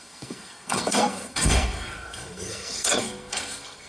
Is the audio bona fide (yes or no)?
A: no